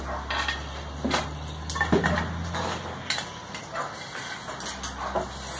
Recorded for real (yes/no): yes